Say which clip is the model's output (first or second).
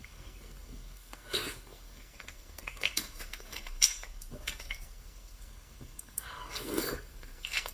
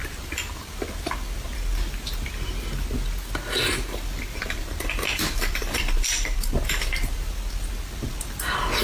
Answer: first